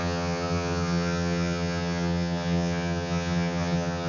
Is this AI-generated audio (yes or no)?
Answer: yes